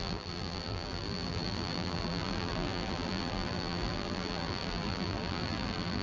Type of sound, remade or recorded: remade